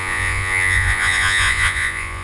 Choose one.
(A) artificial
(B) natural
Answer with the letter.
A